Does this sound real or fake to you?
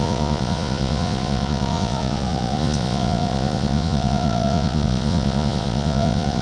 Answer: fake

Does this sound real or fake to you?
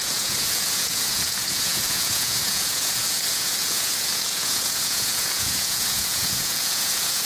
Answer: fake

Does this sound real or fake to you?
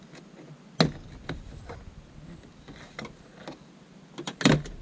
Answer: real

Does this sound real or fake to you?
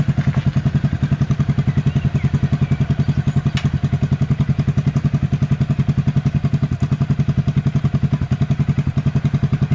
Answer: real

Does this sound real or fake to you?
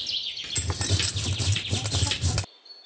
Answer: real